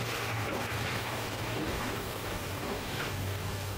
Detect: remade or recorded remade